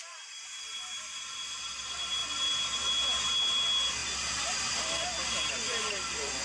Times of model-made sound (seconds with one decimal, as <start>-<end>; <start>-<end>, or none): none